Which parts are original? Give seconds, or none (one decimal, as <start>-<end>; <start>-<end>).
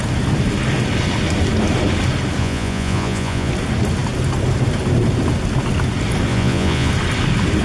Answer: 0.0-2.4; 3.5-6.3; 6.9-7.6